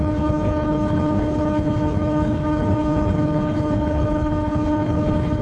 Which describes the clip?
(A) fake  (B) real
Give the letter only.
A